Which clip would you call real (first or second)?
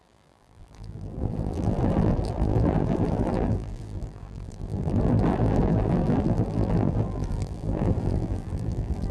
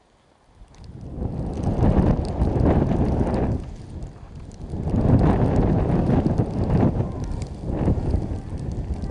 second